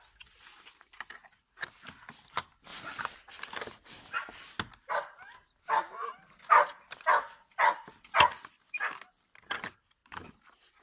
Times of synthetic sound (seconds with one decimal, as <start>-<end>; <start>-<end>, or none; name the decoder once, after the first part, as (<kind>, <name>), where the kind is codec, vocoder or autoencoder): none